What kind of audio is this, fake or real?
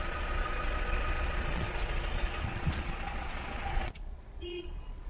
fake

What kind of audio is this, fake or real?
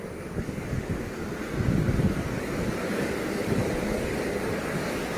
fake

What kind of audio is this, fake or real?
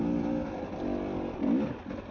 real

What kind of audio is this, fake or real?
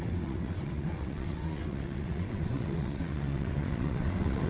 fake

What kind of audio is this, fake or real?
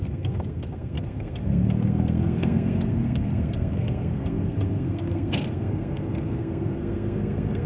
fake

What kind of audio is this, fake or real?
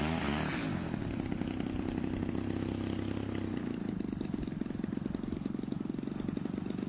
real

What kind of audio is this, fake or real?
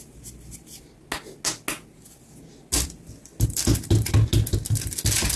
real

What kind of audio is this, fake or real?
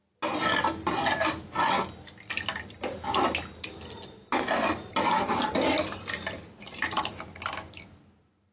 real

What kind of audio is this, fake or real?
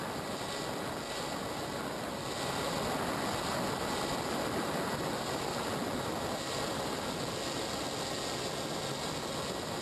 real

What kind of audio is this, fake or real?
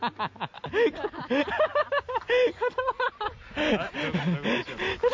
real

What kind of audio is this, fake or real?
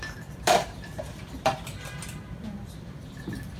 fake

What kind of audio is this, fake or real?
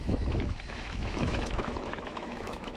fake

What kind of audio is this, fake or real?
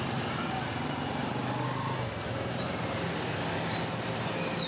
real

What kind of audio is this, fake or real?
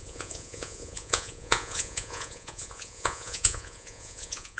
fake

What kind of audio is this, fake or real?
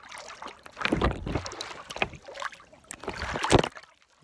real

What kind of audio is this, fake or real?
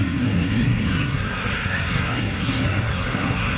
fake